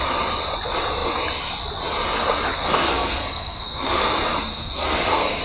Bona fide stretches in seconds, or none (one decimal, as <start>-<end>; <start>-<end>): 0.0-2.8; 4.0-4.5